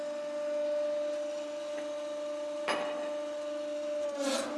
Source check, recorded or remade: recorded